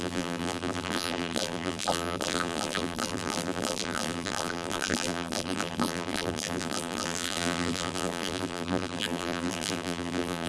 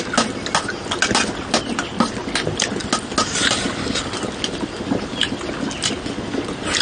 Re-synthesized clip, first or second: first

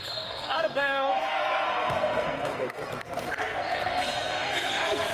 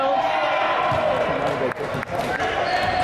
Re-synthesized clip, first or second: first